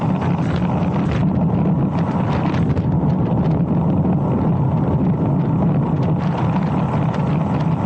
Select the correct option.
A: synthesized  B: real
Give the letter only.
B